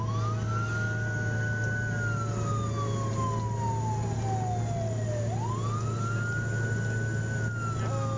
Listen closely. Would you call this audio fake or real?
real